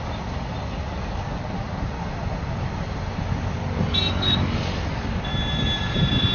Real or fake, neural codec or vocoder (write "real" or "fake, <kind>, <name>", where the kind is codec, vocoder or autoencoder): real